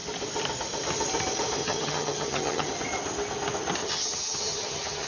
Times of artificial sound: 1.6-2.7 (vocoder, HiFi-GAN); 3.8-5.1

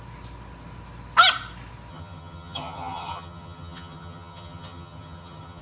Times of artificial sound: 1.9-5.6 (vocoder, HiFi-GAN)

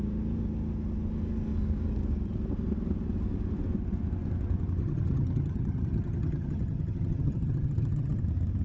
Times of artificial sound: 4.8-8.2 (vocoder, HiFi-GAN)

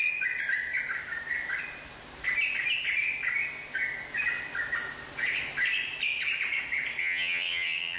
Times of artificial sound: 7.0-8.0 (vocoder, HiFi-GAN)

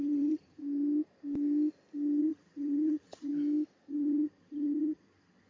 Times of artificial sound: 0.0-0.6 (vocoder, HiFi-GAN); 2.2-3.3; 3.9-5.5